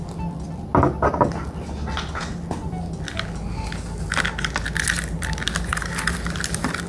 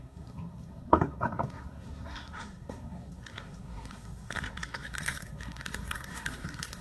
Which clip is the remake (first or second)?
second